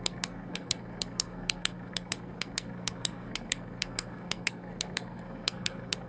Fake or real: fake